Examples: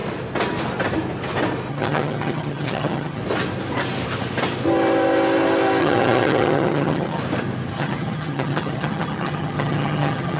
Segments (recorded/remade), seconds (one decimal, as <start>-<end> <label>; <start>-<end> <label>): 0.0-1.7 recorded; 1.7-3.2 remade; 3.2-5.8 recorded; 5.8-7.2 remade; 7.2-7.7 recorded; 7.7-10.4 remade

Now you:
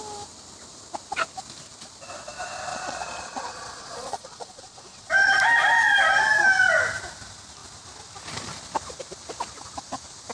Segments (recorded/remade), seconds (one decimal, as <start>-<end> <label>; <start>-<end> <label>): 0.0-2.7 recorded; 2.7-5.1 remade; 5.1-10.3 recorded

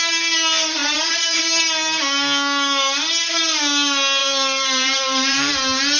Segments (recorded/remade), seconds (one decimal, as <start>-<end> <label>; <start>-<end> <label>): 0.0-0.8 recorded; 0.8-1.4 remade; 1.4-4.2 recorded; 4.2-5.5 remade; 5.5-6.0 recorded

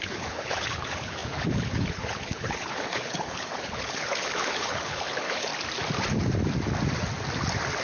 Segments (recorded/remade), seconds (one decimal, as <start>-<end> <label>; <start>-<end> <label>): 0.0-5.5 remade; 5.5-7.8 recorded

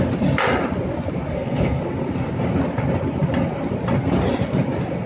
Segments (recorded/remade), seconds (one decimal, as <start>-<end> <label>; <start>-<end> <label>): 0.0-1.3 recorded; 1.3-1.8 remade; 1.8-5.1 recorded